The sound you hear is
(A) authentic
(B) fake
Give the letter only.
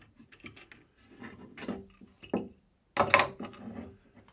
A